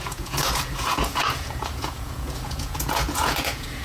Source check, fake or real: fake